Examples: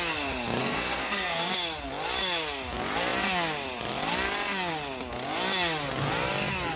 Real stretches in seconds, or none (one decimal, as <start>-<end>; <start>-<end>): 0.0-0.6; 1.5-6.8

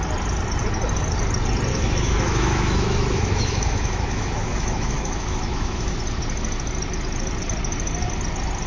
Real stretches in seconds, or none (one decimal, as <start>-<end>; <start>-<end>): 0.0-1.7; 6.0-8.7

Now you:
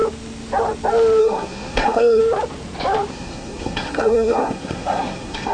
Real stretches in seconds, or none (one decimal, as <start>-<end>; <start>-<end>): 0.0-1.2; 2.2-3.1

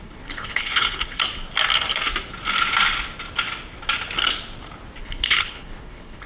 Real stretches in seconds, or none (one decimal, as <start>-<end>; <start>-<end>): 1.2-5.0